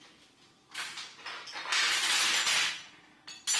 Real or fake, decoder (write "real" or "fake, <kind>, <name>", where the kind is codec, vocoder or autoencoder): real